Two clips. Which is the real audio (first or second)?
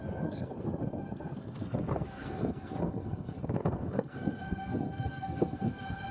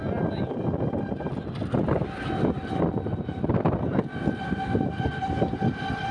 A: second